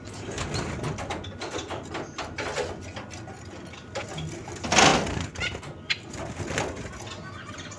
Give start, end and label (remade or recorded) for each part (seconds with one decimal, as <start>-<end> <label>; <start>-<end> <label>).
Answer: 0.0-7.8 recorded